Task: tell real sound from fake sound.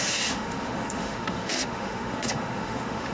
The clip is fake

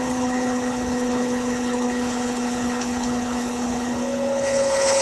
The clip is fake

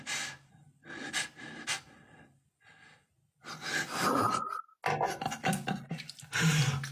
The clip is real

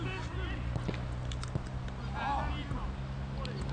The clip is real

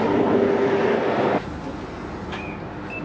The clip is real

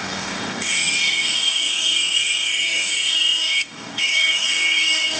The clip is fake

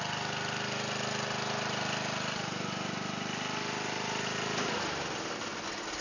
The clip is real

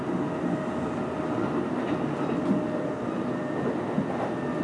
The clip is real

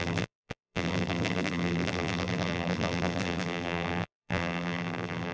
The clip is fake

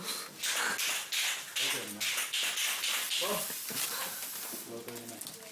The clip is real